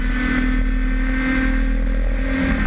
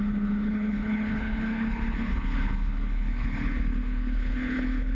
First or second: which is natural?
first